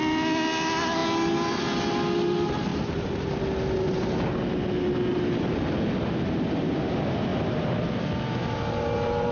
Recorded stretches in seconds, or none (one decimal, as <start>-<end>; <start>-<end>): 0.0-2.7; 3.4-9.3